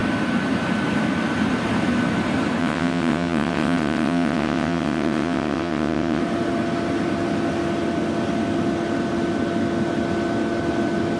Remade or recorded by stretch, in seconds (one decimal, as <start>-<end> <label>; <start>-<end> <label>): 0.0-2.6 recorded; 2.6-6.2 remade; 6.2-11.2 recorded